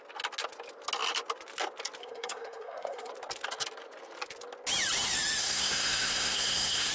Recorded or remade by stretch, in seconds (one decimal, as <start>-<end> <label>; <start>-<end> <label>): 0.0-2.0 recorded; 2.0-3.1 remade; 3.1-5.4 recorded; 5.4-6.9 remade